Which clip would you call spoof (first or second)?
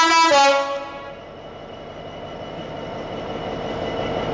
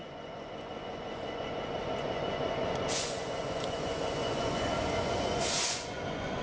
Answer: second